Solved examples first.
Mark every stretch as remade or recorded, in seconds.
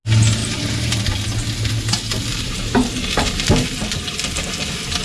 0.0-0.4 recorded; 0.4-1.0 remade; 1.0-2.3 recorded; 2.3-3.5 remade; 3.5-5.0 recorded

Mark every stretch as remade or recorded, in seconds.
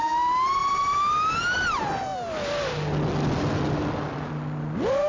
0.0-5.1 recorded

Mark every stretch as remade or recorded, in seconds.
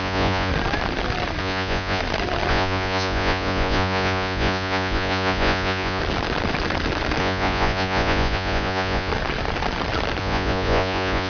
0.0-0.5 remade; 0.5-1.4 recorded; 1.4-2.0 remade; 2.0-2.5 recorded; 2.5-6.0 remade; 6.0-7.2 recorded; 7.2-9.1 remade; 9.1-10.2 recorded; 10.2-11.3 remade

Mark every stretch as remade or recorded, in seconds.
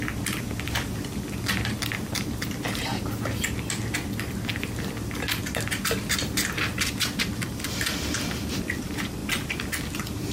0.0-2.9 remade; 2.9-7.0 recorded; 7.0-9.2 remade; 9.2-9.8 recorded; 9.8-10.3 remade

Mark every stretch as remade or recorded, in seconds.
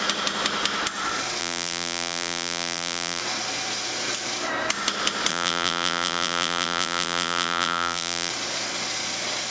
0.0-1.4 recorded; 1.4-3.2 remade; 3.2-5.3 recorded; 5.3-8.3 remade; 8.3-9.5 recorded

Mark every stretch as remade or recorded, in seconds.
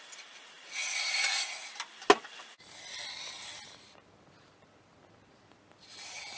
0.0-6.4 recorded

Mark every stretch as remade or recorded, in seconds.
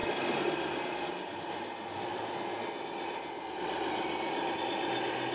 0.0-5.3 recorded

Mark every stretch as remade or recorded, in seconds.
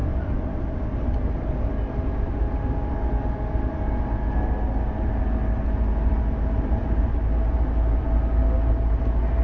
0.0-9.4 recorded